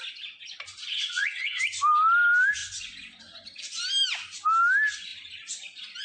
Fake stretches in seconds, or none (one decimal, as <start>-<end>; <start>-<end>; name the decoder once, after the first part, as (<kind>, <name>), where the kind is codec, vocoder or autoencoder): 0.8-1.6 (vocoder, WaveNeXt)